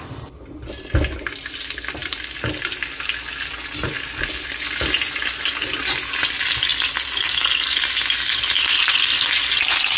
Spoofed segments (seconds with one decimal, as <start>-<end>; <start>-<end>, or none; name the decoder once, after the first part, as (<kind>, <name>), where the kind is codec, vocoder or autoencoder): 2.0-2.6 (vocoder, BigVGAN v2); 6.7-9.2